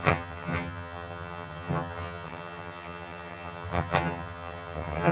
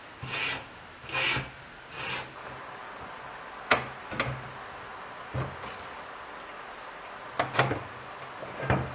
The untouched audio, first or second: second